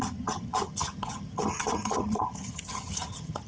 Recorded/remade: remade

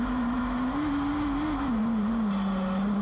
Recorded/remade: recorded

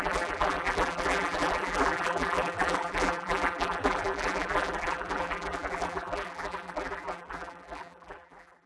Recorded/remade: remade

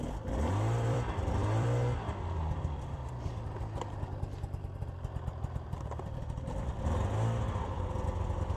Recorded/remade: remade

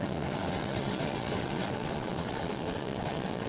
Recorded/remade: remade